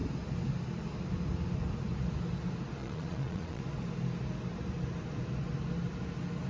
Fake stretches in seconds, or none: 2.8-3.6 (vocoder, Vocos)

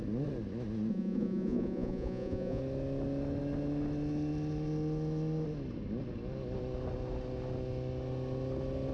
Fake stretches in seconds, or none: 0.9-2.6 (vocoder, Vocos)

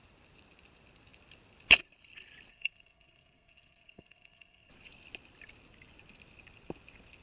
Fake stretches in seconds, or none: 2.5-4.7 (codec, SNAC)

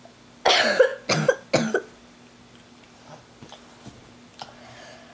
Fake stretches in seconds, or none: none

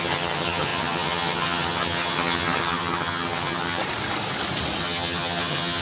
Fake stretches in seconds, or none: 0.0-3.8 (vocoder, HiFi-GAN); 4.8-5.8

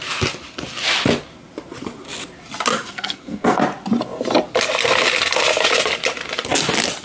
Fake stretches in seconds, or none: 2.7-3.6 (codec, SNAC)

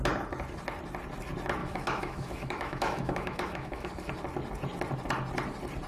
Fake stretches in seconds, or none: 1.6-3.9 (autoencoder, DAC-VAE)